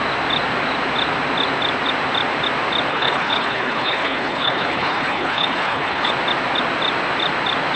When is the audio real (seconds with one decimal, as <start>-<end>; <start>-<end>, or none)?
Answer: 0.0-2.9; 6.1-7.8